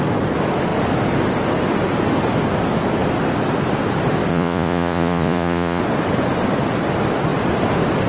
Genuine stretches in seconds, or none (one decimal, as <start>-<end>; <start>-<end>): 0.0-4.3; 5.8-8.1